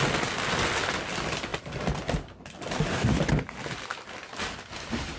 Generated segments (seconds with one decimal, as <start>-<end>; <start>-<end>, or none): none

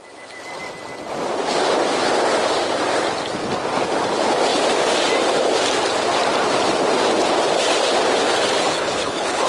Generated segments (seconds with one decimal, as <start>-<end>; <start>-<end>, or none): 8.6-9.5

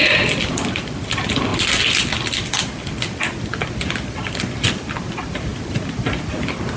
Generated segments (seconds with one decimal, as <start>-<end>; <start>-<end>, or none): none

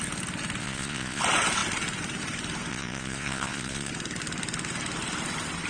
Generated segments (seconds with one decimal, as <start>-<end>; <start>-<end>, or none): 0.6-1.2; 2.7-3.9

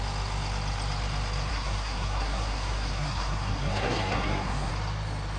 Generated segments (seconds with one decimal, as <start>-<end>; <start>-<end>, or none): 1.5-4.7

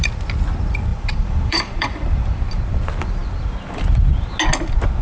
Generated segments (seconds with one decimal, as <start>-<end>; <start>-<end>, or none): 0.9-2.4

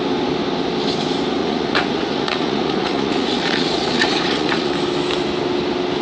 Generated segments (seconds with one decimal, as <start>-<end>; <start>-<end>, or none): 1.4-4.7

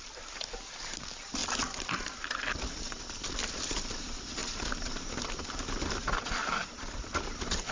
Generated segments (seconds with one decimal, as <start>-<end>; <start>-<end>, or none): 0.0-1.4; 3.2-7.7